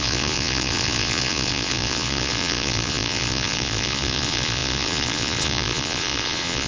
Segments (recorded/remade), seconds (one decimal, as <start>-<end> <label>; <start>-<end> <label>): 0.0-6.7 remade